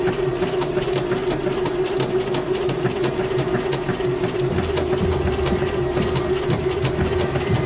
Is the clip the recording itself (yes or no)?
yes